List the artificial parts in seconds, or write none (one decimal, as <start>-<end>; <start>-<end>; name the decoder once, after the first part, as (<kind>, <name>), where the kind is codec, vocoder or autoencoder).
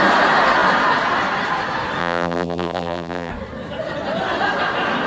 2.0-3.3 (vocoder, BigVGAN v2)